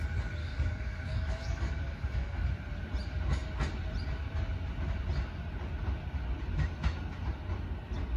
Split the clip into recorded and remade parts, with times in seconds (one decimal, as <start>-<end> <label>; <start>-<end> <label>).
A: 0.0-0.4 recorded; 0.4-2.5 remade; 2.5-8.2 recorded